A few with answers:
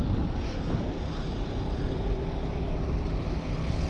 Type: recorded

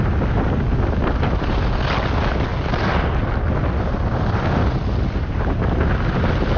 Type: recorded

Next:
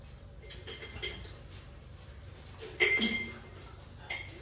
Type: recorded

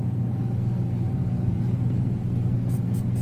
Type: remade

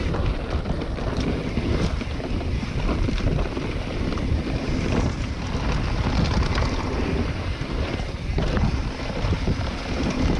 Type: recorded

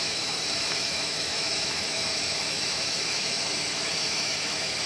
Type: remade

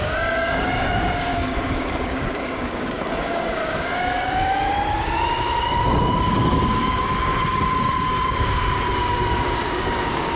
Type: remade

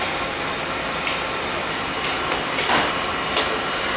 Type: recorded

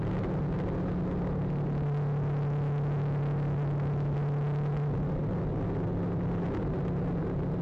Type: recorded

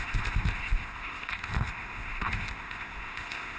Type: remade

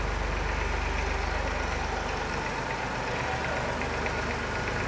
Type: recorded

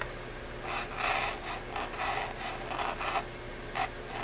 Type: recorded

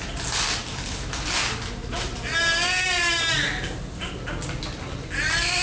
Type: recorded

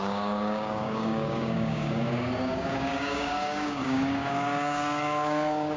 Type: remade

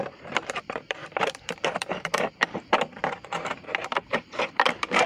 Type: remade